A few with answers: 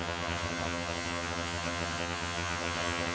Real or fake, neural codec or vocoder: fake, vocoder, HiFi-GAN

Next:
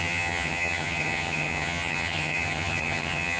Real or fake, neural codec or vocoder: fake, vocoder, HiFi-GAN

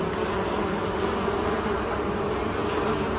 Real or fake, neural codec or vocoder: real